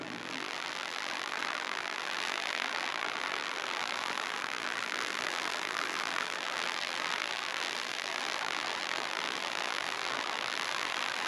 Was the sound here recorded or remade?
remade